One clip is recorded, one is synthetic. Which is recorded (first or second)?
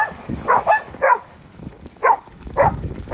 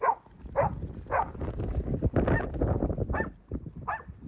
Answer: second